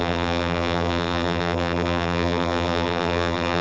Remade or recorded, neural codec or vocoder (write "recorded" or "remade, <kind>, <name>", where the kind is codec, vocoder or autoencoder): remade, vocoder, BigVGAN v2